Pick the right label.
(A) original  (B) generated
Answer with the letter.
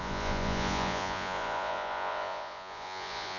B